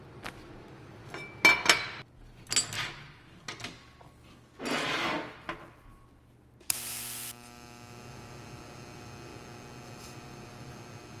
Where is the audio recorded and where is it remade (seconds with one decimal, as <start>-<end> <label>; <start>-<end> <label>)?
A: 0.0-11.2 recorded